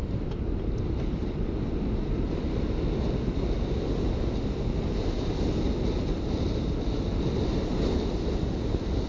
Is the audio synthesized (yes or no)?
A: no